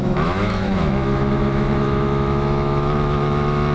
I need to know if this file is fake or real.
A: fake